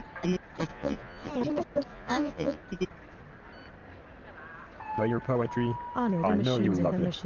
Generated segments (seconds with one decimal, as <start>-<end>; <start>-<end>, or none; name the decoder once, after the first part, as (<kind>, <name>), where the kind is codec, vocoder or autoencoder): 0.7-1.3 (vocoder, Vocos); 1.9-2.6